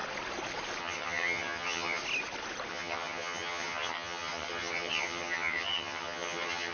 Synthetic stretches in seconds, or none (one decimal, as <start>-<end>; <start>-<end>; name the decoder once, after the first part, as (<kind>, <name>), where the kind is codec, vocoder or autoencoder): 0.8-2.0 (vocoder, HiFi-GAN); 2.7-6.7